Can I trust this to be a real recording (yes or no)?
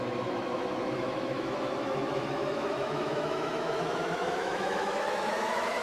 no